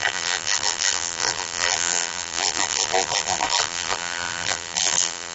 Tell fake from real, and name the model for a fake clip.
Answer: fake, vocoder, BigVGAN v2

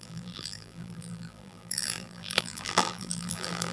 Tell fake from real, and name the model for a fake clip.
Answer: fake, vocoder, BigVGAN v2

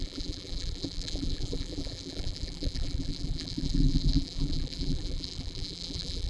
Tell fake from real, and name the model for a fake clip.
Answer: fake, vocoder, BigVGAN v2